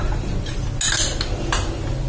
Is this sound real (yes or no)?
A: yes